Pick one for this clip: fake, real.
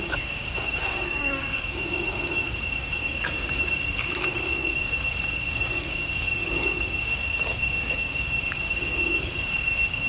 fake